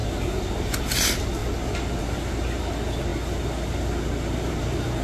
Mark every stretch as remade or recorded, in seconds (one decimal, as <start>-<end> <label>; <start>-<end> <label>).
0.0-5.0 recorded